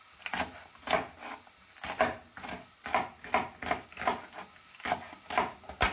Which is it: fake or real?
real